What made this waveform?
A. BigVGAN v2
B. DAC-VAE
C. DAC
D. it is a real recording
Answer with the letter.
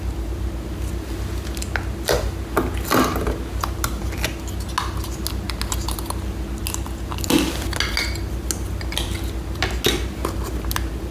D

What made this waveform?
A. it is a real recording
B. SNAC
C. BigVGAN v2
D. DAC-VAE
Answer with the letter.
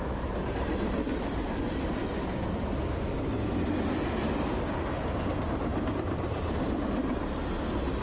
A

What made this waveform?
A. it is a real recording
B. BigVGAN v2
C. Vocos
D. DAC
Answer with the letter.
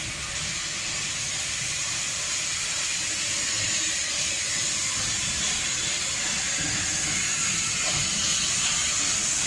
A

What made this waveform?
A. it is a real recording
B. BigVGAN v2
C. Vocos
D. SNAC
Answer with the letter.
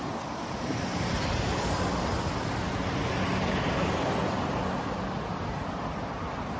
A